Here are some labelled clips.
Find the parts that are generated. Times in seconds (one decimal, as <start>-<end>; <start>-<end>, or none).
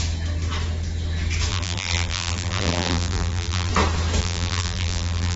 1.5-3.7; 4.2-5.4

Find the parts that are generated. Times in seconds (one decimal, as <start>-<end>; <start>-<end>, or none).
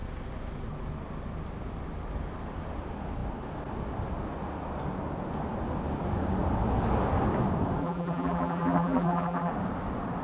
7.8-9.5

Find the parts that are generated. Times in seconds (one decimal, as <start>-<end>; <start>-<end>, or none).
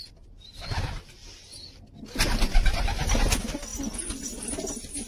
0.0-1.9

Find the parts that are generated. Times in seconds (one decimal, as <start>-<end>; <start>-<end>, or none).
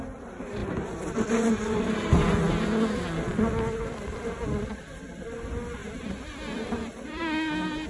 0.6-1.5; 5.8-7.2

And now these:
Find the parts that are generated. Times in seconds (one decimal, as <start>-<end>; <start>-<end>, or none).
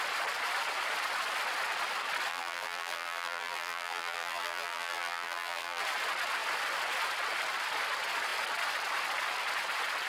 2.3-5.8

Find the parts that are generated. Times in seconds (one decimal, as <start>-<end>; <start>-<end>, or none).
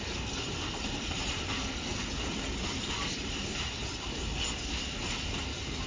2.7-5.1